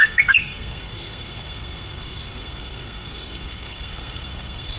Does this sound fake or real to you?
fake